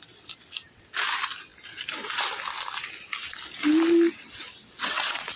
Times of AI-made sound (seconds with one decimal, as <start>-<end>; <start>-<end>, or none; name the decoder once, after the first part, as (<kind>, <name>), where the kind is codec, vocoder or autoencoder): 4.6-5.4 (vocoder, WaveNeXt)